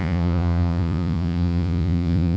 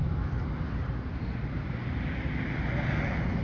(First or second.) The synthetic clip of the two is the first